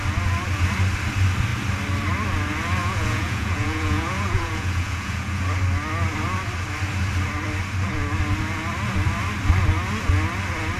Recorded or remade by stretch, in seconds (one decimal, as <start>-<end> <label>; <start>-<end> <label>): 0.0-2.8 recorded; 2.8-5.4 remade; 5.4-10.8 recorded